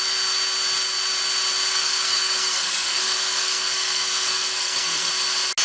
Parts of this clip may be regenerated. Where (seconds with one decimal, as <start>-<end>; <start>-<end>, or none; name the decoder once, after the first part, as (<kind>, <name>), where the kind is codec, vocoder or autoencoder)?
1.7-5.1 (codec, SNAC)